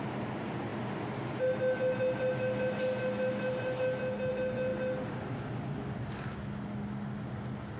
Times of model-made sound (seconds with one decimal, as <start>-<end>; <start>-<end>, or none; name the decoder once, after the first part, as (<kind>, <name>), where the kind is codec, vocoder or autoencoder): none